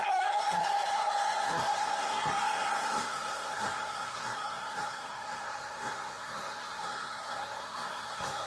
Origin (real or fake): fake